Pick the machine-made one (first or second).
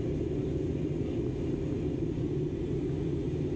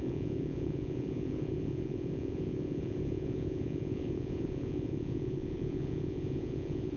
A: second